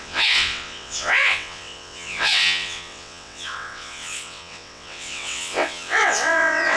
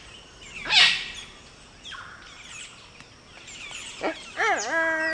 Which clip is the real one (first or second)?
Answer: second